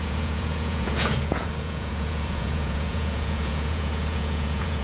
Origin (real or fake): fake